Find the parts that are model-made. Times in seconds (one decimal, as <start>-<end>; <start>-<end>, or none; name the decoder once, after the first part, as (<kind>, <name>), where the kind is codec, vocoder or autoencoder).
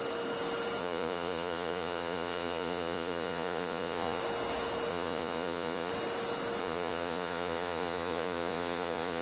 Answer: 0.8-4.2 (vocoder, Vocos); 4.9-5.9; 6.6-9.2